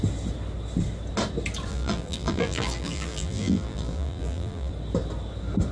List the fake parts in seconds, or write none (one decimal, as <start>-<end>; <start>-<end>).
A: 1.7-4.7